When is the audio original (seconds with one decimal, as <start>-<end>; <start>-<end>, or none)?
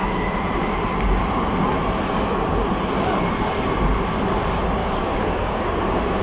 0.0-4.8